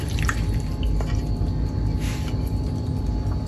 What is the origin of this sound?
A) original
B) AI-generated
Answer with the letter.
A